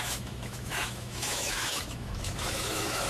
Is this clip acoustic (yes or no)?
no